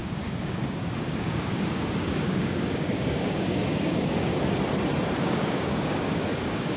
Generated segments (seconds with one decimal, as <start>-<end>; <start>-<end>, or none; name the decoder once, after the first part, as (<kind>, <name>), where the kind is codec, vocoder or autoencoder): 0.0-4.3 (codec, DAC); 5.2-6.8